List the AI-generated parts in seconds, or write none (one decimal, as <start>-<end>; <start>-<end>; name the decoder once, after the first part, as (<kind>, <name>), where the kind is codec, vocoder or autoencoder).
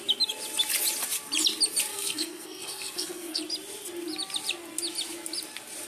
1.9-3.4 (codec, SNAC)